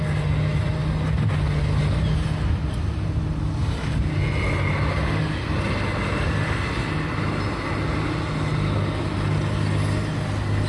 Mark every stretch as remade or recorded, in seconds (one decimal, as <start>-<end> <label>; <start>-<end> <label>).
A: 0.0-10.7 recorded